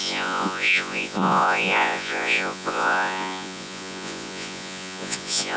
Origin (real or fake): fake